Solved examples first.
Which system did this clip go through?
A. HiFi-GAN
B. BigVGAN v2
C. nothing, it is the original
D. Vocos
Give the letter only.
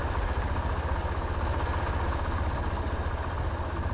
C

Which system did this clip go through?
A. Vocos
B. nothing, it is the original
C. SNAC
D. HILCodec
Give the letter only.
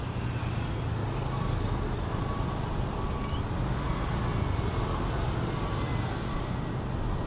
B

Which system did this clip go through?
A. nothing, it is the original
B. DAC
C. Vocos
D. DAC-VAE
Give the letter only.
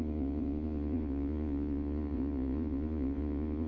C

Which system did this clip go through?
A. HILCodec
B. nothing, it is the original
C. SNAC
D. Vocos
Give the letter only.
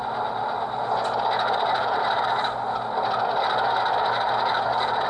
B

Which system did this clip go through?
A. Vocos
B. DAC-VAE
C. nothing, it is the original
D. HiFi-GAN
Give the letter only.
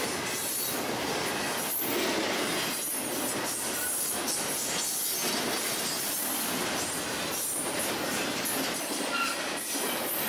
C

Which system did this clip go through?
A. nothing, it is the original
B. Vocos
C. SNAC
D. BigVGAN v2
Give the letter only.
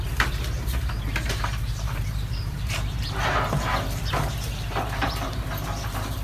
D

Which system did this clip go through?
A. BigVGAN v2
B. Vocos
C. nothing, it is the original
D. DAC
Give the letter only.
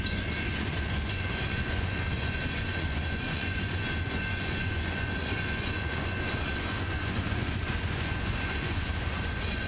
B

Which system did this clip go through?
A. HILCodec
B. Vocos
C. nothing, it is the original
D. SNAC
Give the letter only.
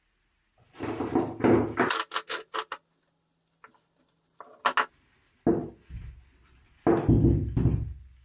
C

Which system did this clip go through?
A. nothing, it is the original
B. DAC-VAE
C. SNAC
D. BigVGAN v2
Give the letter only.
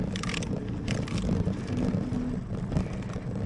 A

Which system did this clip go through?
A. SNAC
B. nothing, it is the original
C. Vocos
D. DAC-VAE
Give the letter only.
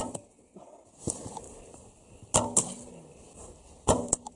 B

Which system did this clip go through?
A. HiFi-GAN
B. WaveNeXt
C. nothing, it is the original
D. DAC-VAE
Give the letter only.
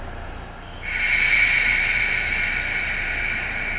C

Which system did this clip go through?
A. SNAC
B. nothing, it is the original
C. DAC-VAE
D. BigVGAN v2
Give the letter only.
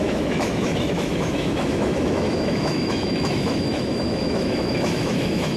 C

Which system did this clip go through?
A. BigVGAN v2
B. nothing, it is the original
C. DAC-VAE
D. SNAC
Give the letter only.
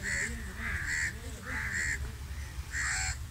B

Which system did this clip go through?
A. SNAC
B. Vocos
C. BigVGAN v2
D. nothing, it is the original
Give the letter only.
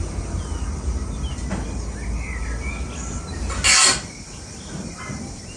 D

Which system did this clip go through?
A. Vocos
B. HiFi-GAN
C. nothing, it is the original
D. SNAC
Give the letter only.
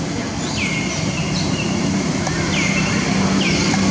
C